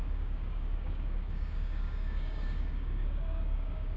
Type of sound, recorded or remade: remade